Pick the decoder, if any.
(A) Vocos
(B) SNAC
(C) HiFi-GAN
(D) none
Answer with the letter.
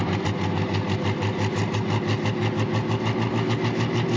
D